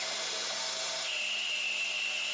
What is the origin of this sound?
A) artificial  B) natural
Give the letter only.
B